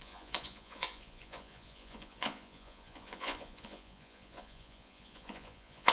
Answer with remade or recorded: remade